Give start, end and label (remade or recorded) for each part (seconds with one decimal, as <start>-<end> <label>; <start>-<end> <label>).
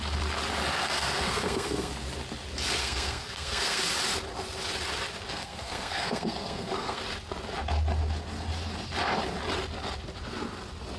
0.0-0.7 recorded; 0.7-1.9 remade; 1.9-2.8 recorded; 2.8-3.8 remade; 3.8-5.3 recorded; 5.3-7.0 remade; 7.0-11.0 recorded